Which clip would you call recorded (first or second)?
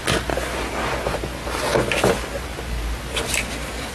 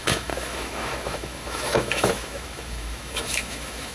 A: first